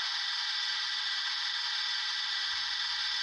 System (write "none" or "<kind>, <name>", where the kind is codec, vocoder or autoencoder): none